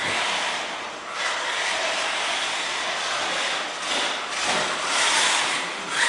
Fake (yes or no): no